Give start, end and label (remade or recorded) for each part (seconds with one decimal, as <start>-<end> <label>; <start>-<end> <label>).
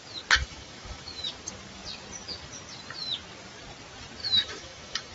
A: 0.0-0.4 recorded; 0.4-1.3 remade; 1.3-4.2 recorded; 4.2-5.1 remade